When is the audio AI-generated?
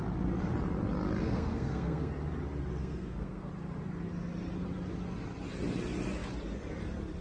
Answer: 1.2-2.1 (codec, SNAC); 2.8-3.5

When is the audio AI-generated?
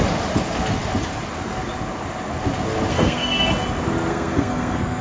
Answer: 2.9-3.5 (codec, SNAC); 4.1-5.0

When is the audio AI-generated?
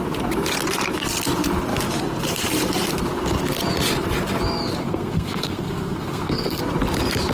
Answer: 4.8-6.6 (codec, SNAC)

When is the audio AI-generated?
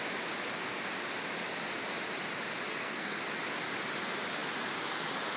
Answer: 2.7-3.2 (codec, SNAC)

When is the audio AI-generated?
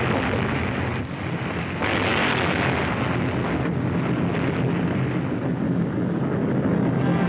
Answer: none